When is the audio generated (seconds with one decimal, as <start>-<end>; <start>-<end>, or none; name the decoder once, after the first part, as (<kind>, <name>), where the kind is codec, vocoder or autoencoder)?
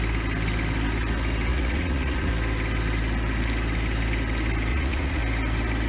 1.5-2.3 (vocoder, Vocos); 4.7-5.2